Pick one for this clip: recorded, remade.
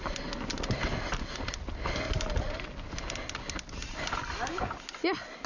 recorded